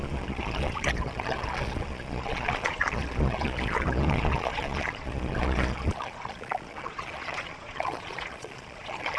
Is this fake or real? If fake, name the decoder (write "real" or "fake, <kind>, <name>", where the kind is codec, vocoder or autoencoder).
fake, vocoder, Vocos